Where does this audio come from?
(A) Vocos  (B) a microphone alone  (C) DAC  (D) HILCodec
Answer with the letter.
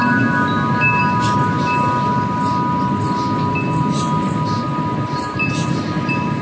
B